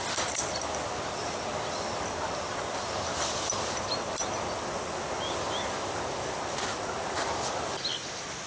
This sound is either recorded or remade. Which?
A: recorded